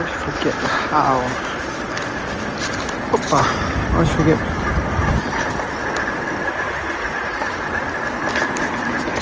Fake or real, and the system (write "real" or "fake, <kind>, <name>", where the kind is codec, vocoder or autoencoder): real